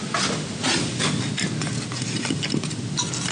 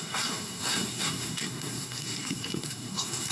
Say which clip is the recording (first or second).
first